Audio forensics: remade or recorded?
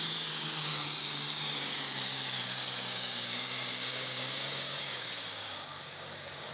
remade